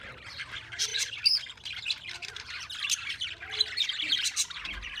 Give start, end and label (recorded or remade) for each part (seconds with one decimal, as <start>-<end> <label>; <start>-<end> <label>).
0.0-5.0 remade